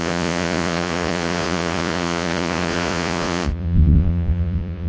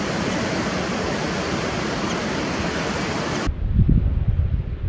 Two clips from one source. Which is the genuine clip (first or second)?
second